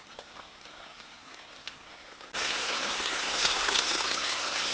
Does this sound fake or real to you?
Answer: fake